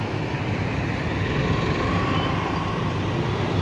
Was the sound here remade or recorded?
recorded